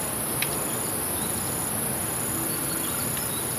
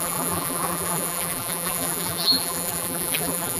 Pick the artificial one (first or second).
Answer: second